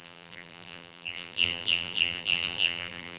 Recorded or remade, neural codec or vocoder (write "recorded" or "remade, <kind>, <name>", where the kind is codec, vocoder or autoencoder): remade, vocoder, BigVGAN v2